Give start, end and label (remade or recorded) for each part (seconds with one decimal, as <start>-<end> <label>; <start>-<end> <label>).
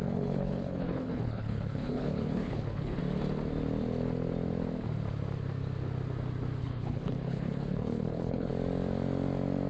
0.0-3.0 remade; 3.0-6.6 recorded; 6.6-8.5 remade; 8.5-9.7 recorded